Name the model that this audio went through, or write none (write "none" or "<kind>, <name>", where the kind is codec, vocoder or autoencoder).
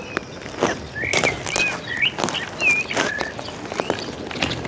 none